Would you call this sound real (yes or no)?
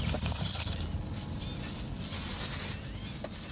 yes